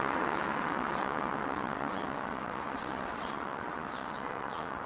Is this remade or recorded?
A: remade